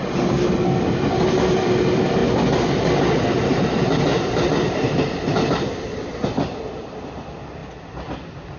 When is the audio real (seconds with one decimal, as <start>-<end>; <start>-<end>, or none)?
0.0-8.6